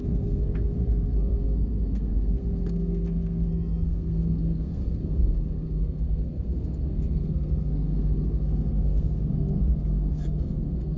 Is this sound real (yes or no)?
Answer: no